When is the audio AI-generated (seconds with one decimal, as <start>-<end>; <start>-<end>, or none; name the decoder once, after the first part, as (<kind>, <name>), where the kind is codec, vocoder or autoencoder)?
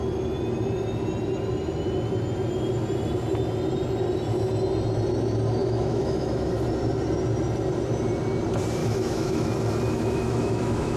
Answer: 5.6-6.5 (autoencoder, DAC-VAE); 8.8-9.5; 9.9-11.0